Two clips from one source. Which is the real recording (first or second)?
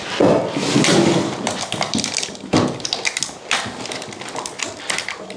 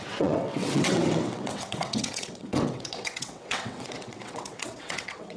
first